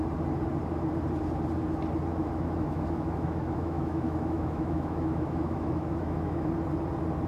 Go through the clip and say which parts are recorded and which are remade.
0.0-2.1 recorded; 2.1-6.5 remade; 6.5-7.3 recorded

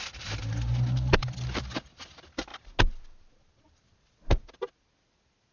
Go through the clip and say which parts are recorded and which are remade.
0.0-5.5 recorded

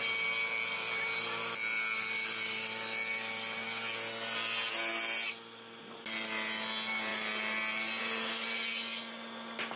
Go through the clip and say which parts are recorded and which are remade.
0.0-9.8 recorded

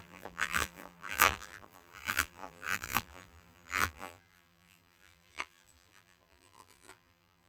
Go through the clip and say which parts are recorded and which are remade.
0.0-7.5 remade

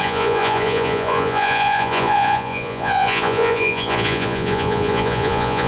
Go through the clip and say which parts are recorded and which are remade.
0.0-5.7 remade